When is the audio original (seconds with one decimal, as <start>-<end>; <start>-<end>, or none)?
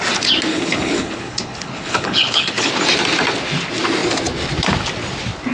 0.0-0.5; 2.7-5.5